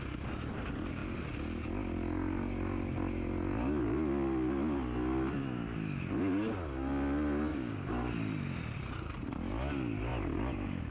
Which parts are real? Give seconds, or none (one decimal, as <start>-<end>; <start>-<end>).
0.0-7.5; 8.1-10.9